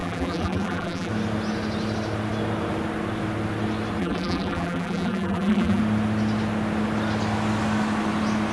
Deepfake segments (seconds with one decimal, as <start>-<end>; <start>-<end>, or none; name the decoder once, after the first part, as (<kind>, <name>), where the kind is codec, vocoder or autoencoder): 0.0-1.1 (vocoder, BigVGAN v2); 4.0-5.8